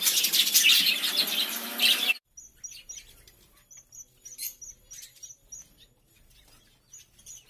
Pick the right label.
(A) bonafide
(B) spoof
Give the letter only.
A